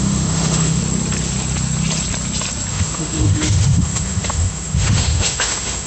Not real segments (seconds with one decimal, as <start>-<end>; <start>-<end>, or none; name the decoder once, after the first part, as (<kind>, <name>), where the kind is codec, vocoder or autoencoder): 0.0-0.8 (autoencoder, DAC-VAE); 2.7-5.9